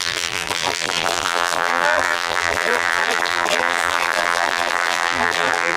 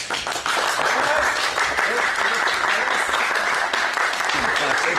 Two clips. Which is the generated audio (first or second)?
first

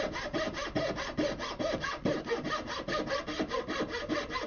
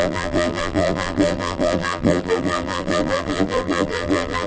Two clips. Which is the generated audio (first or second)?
second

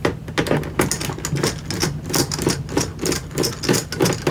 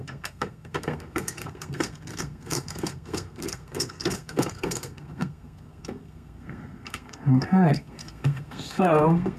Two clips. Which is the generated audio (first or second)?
second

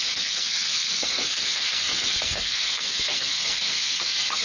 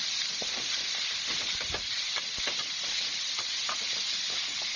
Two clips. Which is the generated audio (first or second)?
first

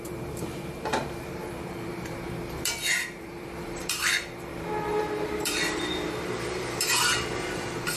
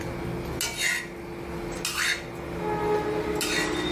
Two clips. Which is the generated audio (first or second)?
first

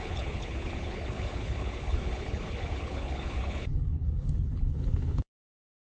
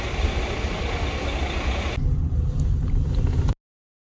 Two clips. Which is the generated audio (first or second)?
first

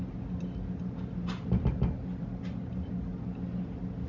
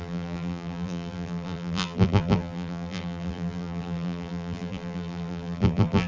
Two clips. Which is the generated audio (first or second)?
second